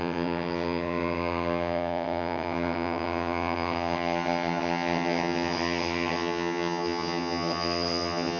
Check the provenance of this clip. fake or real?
fake